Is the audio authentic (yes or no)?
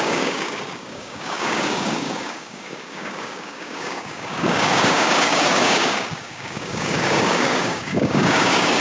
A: no